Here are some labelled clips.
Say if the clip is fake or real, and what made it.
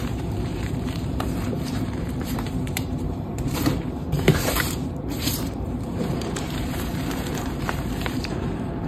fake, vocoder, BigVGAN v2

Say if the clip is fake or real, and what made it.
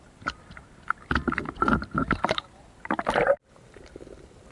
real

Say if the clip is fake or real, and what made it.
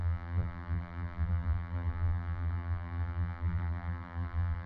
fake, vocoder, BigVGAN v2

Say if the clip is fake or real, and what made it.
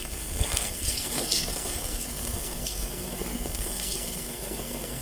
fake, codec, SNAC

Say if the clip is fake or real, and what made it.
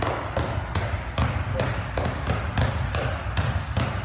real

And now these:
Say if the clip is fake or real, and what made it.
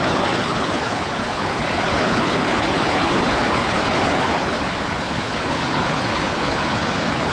fake, codec, HILCodec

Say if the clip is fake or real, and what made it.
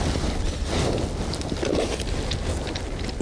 real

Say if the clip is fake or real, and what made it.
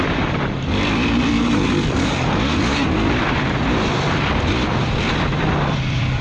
fake, vocoder, BigVGAN v2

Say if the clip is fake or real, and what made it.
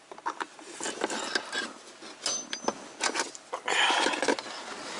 real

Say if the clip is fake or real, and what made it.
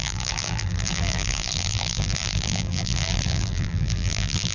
fake, vocoder, BigVGAN v2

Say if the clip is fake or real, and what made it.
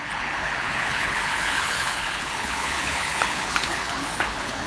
fake, codec, HILCodec